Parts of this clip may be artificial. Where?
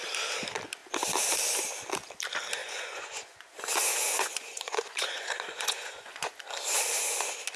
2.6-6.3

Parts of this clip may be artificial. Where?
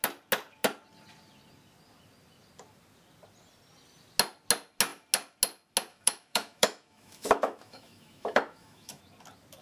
5.9-9.0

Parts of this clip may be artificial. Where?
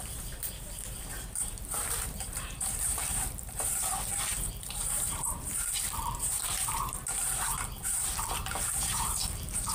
0.0-9.7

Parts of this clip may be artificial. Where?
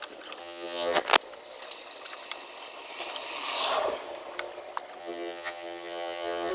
0.4-1.0; 5.0-6.5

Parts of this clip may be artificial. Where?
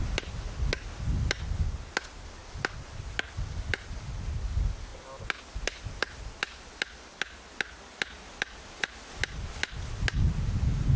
none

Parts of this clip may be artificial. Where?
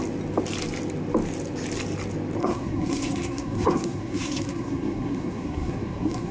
2.4-6.3